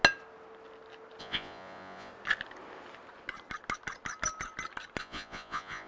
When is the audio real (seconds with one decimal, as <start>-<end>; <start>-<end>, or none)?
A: 0.0-1.2; 2.1-5.0